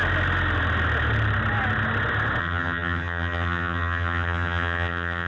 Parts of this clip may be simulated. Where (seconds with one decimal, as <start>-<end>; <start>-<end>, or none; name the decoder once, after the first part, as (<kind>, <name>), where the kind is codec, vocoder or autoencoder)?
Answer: 2.4-5.3 (vocoder, HiFi-GAN)

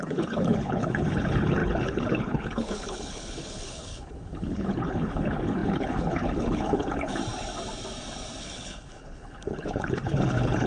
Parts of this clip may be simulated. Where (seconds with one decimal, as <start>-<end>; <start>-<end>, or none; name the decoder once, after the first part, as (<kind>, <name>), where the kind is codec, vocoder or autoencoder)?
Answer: 0.0-7.2 (codec, HILCodec); 8.4-10.7

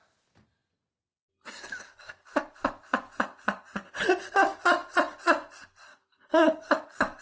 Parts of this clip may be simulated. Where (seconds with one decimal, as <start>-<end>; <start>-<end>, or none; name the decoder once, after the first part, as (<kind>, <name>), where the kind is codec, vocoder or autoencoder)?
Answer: 5.9-7.2 (codec, DAC)

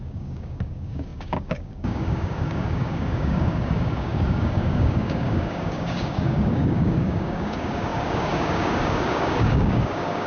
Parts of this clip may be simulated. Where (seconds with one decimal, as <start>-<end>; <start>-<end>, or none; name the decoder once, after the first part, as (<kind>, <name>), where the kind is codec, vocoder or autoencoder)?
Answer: 0.0-10.3 (codec, DAC)

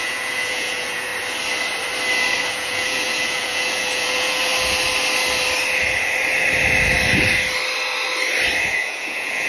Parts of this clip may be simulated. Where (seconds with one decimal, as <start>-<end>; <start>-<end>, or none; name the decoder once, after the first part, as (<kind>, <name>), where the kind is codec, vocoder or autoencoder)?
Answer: 0.0-1.1 (vocoder, Vocos); 2.5-4.5; 8.7-9.5